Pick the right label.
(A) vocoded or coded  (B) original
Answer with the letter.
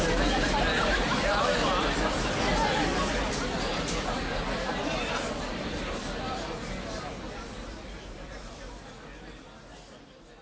B